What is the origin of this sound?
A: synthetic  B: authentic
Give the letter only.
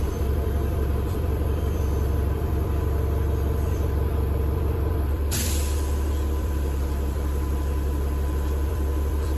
A